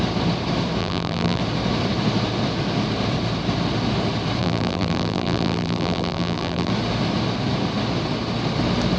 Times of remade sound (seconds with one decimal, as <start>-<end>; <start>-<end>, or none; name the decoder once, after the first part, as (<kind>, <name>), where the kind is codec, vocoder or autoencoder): 0.8-1.4 (vocoder, BigVGAN v2); 4.4-6.7